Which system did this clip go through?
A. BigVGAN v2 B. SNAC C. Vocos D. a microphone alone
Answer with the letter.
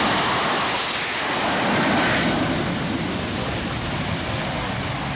D